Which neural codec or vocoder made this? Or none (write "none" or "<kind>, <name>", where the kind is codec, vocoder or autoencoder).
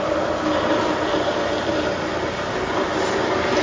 none